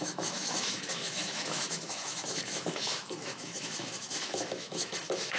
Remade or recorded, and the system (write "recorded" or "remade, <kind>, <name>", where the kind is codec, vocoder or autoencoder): remade, autoencoder, DAC-VAE